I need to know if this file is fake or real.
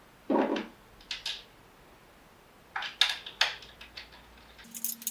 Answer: real